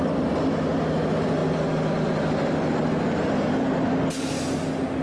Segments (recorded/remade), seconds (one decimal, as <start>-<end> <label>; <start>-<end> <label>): 0.0-5.0 recorded